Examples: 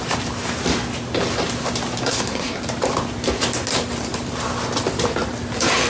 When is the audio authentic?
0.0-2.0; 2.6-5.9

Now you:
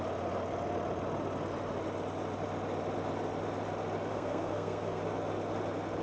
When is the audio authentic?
0.0-4.1; 5.0-6.0

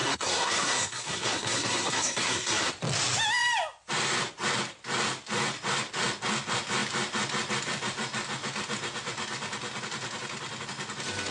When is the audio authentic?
2.7-11.3

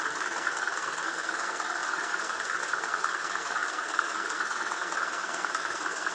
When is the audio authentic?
none

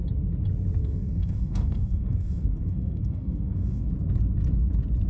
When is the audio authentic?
0.0-0.8; 3.9-5.1

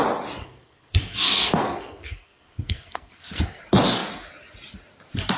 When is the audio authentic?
0.0-0.4; 3.6-5.4

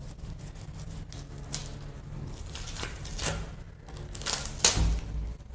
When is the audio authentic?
0.0-5.5